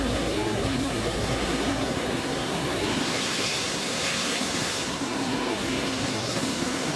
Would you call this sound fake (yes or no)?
yes